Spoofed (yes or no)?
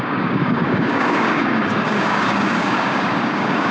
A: yes